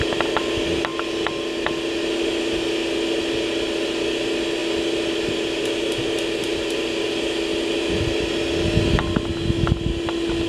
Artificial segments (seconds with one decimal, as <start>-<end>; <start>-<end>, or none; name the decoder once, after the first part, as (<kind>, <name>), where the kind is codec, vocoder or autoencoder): none